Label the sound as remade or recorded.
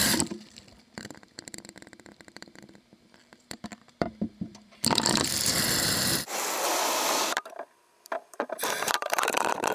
remade